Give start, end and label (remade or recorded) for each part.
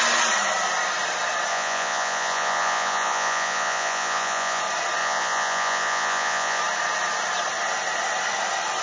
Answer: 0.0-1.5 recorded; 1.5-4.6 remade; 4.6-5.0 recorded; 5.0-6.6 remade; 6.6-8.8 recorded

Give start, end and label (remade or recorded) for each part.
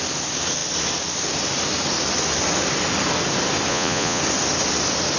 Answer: 0.0-3.7 recorded; 3.7-4.2 remade; 4.2-5.2 recorded